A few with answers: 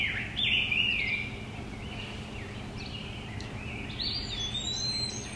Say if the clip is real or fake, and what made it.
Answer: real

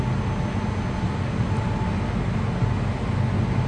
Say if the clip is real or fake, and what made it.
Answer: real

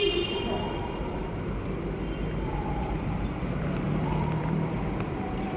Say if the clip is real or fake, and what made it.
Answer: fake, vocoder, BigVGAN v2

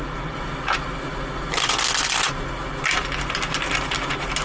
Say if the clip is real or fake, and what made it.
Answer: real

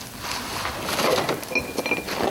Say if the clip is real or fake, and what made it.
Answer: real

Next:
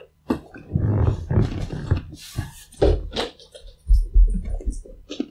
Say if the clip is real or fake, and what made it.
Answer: fake, vocoder, BigVGAN v2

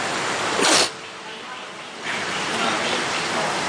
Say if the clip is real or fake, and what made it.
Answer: fake, vocoder, BigVGAN v2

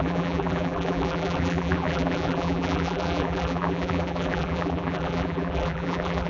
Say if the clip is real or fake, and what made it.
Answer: fake, vocoder, BigVGAN v2